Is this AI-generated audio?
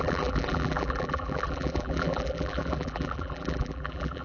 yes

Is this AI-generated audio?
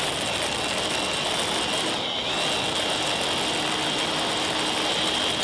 no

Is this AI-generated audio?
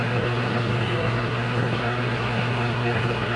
yes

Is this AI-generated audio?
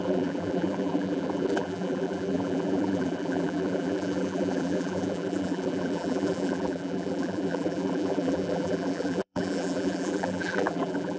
yes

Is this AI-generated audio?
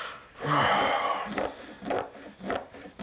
no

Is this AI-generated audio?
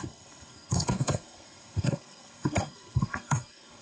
yes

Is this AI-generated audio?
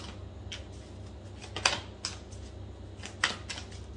no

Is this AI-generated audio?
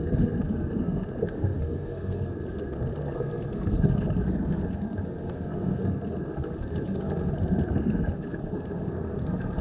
yes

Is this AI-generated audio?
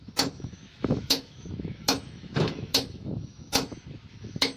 yes